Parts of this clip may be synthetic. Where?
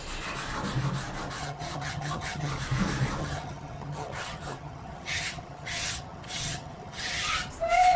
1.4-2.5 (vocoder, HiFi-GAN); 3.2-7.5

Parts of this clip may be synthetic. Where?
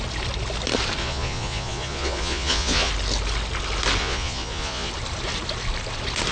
1.0-2.9 (vocoder, Vocos); 4.0-4.9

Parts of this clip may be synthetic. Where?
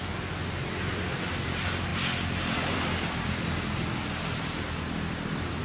none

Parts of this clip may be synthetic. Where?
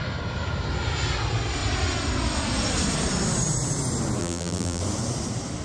4.2-4.8 (vocoder, BigVGAN v2)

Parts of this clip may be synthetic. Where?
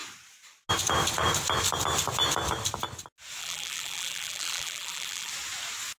3.4-5.3 (vocoder, BigVGAN v2)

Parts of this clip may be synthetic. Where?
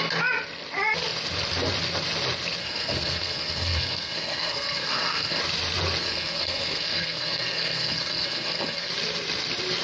2.6-5.4 (codec, SNAC); 6.0-8.9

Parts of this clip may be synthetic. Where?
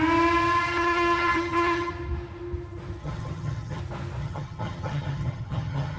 0.7-1.9 (vocoder, HiFi-GAN); 3.0-3.8; 4.2-6.0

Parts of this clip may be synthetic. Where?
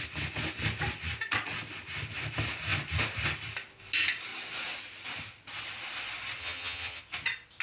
6.4-7.0 (vocoder, HiFi-GAN)